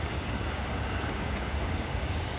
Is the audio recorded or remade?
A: remade